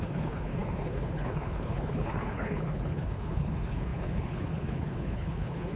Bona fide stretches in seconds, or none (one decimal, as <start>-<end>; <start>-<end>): none